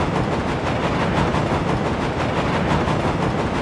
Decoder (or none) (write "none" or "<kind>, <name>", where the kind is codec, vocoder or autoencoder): none